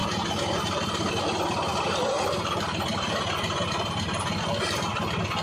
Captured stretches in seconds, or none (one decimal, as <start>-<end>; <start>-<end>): 1.1-1.7; 4.4-5.4